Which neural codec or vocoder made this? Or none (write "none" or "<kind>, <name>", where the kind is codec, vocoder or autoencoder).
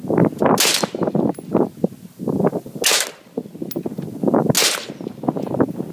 none